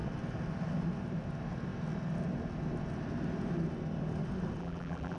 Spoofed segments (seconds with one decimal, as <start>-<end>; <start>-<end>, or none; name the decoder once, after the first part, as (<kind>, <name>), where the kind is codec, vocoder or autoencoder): 4.6-5.2 (vocoder, BigVGAN v2)